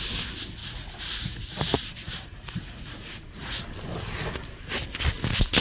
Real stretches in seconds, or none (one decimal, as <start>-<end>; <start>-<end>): 0.0-0.6; 3.6-5.6